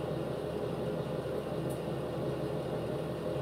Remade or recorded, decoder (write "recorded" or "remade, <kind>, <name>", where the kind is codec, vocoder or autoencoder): recorded